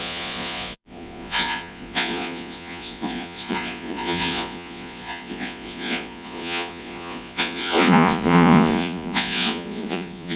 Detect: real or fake fake